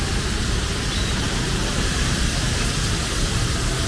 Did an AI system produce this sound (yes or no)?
yes